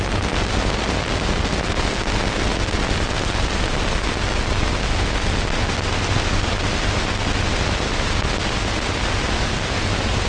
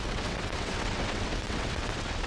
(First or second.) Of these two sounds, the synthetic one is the second